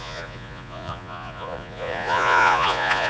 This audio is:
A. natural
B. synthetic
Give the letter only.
B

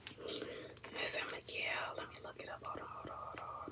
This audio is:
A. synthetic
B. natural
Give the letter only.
B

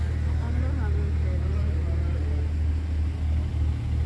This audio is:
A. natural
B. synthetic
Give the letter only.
A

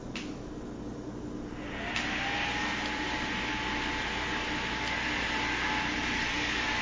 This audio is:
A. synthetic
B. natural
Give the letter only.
B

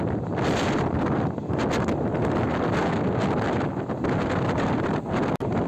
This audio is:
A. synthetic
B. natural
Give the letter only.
B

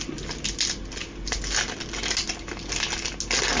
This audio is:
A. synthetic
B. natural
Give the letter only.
B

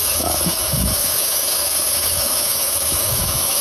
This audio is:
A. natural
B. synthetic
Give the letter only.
B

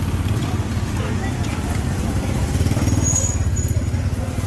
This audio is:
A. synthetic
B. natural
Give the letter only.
B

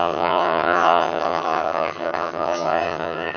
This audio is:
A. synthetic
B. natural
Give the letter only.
A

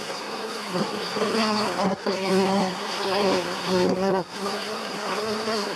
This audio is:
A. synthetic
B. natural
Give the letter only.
A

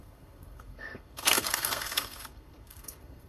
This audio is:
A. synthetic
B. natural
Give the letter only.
A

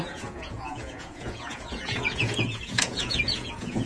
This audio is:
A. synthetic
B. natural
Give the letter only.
A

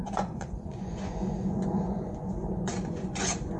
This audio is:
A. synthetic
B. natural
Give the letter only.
A